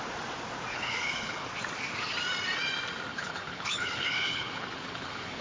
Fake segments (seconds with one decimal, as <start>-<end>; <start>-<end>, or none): 0.7-1.5; 3.1-5.4